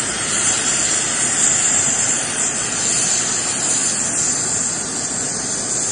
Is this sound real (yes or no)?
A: yes